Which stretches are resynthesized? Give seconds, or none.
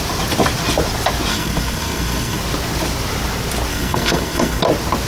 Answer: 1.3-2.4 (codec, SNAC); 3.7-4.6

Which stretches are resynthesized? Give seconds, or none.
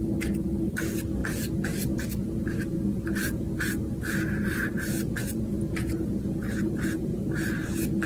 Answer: none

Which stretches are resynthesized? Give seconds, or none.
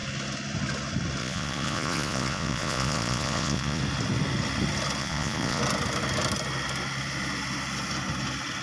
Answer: 1.2-3.8 (vocoder, Vocos); 5.0-5.6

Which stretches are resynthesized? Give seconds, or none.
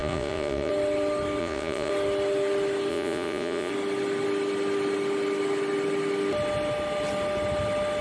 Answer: 0.0-0.7 (vocoder, Vocos); 1.4-1.9; 2.9-3.7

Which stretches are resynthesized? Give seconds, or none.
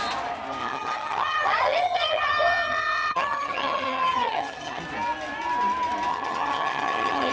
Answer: 0.6-4.8 (vocoder, HiFi-GAN); 6.1-7.3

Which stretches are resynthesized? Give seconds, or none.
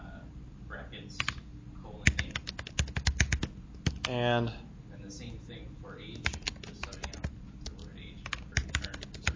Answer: none